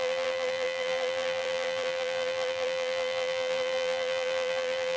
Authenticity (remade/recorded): remade